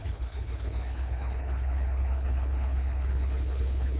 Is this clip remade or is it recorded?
remade